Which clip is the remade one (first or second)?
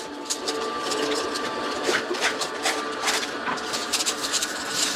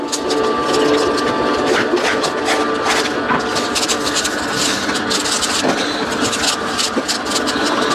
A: first